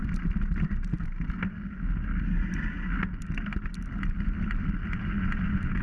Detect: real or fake real